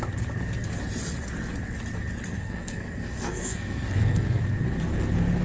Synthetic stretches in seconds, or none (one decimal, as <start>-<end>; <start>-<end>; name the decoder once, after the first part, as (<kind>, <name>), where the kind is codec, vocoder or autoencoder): 2.3-4.4 (codec, SNAC)